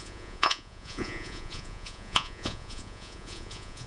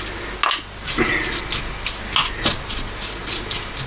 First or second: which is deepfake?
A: first